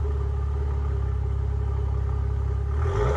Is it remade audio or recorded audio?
recorded